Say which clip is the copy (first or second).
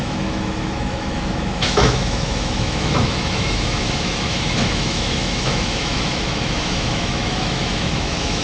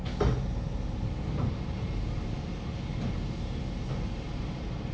first